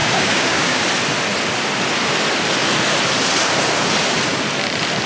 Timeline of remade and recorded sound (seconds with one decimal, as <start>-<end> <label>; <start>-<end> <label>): 0.0-0.8 remade; 0.8-5.1 recorded